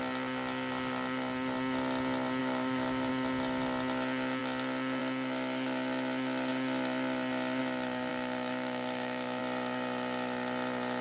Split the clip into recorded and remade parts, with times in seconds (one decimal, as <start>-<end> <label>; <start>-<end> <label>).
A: 0.0-2.4 recorded; 2.4-3.1 remade; 3.1-8.1 recorded; 8.1-9.4 remade; 9.4-11.0 recorded